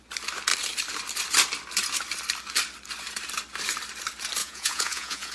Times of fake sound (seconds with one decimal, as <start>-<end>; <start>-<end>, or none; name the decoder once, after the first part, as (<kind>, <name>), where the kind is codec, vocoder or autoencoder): 4.4-5.3 (vocoder, Vocos)

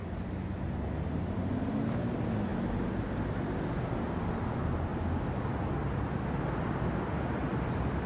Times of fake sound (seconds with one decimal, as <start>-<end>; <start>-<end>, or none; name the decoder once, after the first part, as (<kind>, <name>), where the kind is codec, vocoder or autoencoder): none

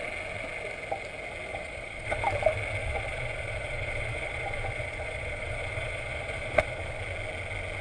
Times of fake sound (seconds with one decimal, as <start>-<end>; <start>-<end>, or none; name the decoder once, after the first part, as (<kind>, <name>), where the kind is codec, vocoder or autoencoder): 1.5-2.2 (vocoder, Vocos); 2.8-7.0

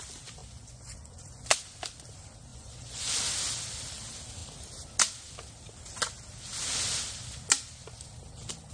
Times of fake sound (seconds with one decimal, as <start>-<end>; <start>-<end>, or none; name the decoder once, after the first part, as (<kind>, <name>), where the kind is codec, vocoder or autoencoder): 0.4-1.6 (vocoder, Vocos); 2.5-3.1

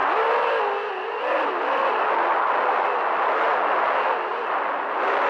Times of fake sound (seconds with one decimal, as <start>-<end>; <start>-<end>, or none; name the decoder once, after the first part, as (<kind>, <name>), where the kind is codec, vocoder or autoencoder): none

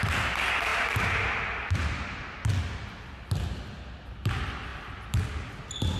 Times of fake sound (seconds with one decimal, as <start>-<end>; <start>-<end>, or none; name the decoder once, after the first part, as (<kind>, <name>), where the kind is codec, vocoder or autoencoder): none